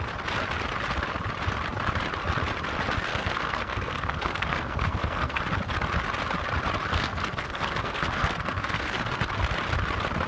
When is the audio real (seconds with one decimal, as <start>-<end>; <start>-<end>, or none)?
0.0-3.1; 5.4-6.9; 9.1-10.3